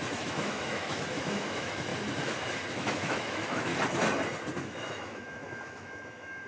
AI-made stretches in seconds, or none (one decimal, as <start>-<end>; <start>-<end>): 0.0-1.9; 2.7-3.7; 4.6-6.5